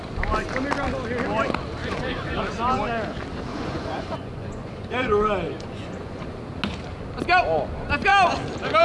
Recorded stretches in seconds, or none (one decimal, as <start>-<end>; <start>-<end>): 0.0-1.8; 2.4-3.5; 6.4-8.8